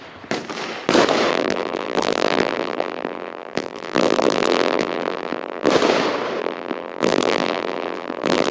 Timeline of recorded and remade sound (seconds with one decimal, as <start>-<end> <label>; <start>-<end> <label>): 0.0-1.3 recorded; 1.3-5.7 remade; 5.7-6.4 recorded; 6.4-8.5 remade